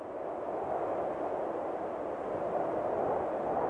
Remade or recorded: recorded